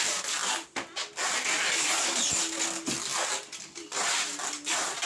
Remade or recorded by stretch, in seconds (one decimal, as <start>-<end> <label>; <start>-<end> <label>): 0.0-5.1 recorded